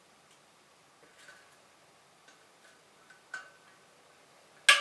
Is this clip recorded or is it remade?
recorded